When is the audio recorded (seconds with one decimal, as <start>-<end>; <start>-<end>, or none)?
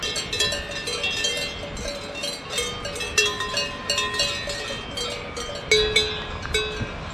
0.0-7.1